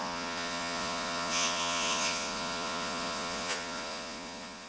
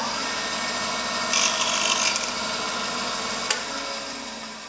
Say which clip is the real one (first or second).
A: second